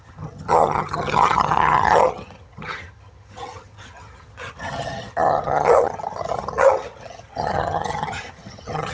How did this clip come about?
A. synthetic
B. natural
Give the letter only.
A